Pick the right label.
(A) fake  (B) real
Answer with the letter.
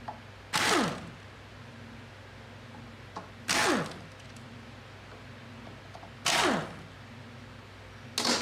B